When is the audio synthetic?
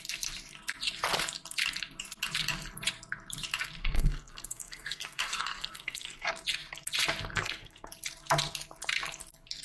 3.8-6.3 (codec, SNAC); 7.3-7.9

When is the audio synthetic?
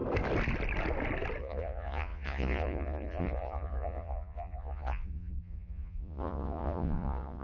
1.4-7.4 (vocoder, Vocos)